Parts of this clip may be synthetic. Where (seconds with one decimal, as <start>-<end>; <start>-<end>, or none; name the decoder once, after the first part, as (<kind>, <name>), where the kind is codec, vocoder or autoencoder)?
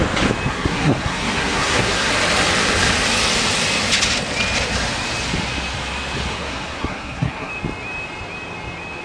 0.5-2.1 (codec, SNAC); 6.3-7.5